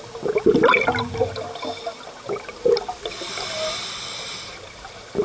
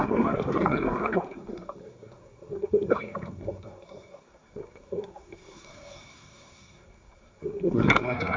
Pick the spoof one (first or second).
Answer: second